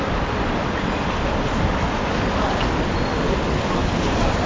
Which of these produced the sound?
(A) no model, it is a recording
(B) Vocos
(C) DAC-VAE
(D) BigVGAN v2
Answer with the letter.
A